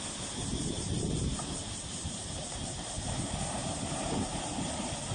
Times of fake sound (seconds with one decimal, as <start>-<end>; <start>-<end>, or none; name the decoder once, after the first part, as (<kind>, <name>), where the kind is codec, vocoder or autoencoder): 0.5-2.9 (vocoder, BigVGAN v2); 3.6-4.4